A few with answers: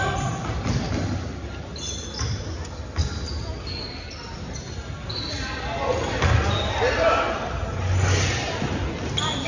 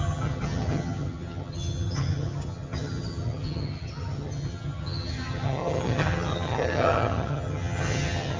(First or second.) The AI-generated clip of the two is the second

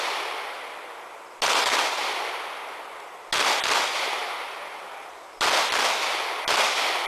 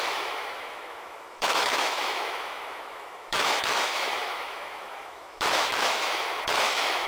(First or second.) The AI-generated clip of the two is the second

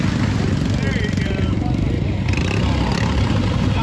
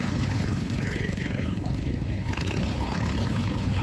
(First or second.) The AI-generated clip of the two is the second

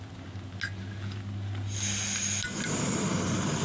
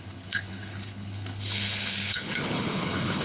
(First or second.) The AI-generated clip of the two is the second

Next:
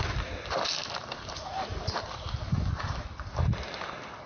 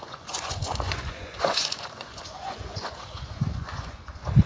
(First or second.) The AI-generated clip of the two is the second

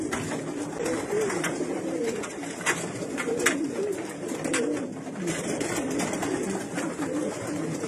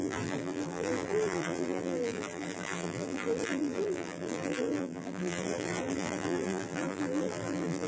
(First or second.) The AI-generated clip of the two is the second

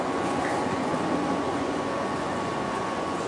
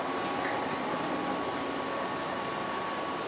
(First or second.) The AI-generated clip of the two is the first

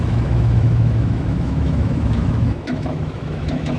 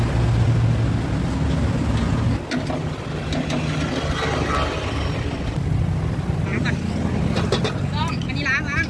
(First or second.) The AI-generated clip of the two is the first